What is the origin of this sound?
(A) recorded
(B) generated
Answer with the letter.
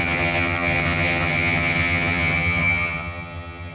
B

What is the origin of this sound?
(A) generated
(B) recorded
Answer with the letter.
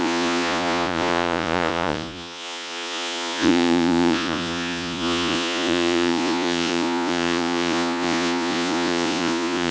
A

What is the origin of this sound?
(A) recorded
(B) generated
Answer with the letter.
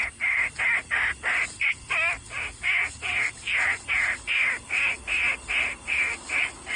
A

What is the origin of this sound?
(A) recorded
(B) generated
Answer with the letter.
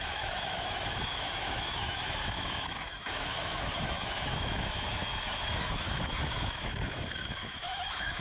B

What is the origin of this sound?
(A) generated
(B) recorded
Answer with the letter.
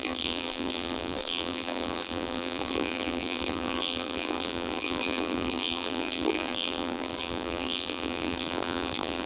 A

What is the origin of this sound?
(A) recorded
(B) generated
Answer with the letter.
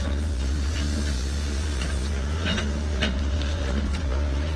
B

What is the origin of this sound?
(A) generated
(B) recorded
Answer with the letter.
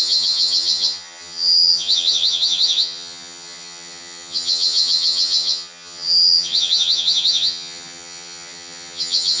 A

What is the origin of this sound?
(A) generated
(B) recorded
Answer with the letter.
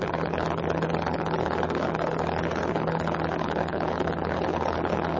A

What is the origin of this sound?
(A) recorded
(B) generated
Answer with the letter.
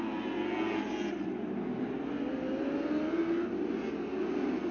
A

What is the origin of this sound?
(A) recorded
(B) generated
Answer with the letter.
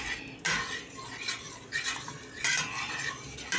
A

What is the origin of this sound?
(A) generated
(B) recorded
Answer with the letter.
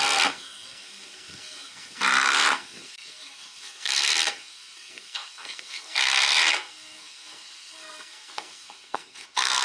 A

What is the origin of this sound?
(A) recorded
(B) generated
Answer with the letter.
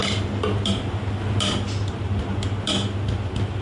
A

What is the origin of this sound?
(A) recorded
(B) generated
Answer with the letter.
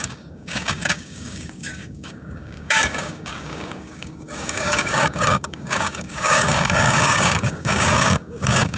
B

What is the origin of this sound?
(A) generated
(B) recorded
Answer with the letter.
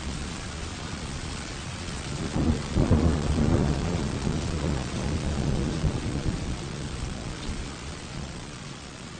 A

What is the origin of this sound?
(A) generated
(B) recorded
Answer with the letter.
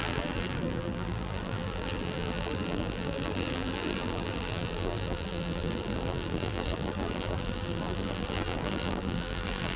A